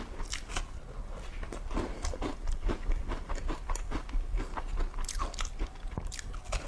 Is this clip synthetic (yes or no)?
no